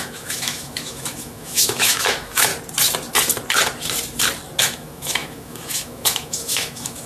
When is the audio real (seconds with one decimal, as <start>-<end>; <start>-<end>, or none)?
2.5-4.6